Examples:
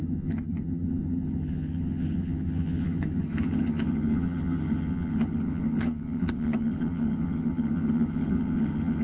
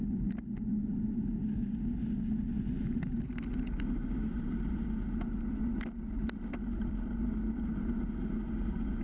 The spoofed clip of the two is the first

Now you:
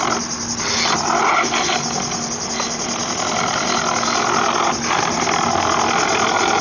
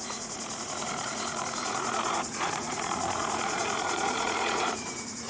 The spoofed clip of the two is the second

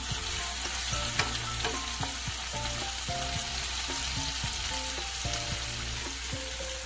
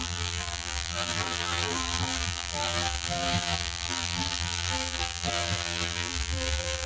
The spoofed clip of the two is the second